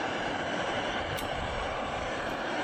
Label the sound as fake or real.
fake